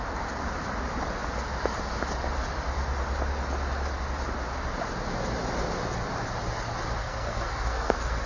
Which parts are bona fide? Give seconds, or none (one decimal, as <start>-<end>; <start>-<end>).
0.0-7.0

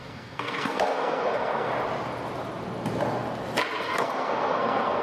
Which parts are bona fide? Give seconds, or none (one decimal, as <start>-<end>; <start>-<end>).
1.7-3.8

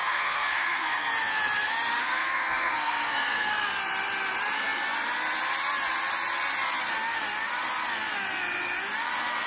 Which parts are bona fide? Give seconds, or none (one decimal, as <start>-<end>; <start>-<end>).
1.1-2.0; 3.5-9.5